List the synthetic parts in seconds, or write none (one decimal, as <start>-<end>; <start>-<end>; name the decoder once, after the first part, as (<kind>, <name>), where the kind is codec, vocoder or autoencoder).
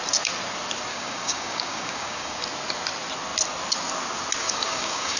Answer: 0.9-2.4 (codec, DAC); 4.4-5.2